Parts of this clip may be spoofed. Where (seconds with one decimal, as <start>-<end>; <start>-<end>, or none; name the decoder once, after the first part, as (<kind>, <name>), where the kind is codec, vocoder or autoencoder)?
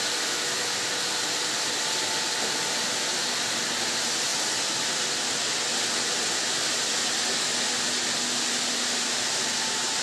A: none